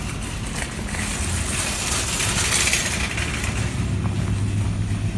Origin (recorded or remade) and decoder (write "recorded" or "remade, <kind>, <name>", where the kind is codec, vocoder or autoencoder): recorded